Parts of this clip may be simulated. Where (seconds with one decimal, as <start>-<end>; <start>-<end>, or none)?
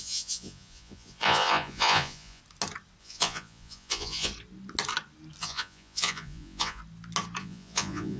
0.0-2.4; 3.0-4.3; 5.4-6.8; 7.4-8.2